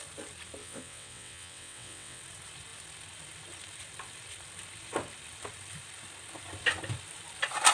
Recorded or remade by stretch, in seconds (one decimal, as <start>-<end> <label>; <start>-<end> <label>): 0.0-0.6 recorded; 0.6-2.2 remade; 2.2-7.7 recorded